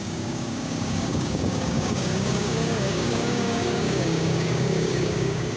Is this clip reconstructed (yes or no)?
yes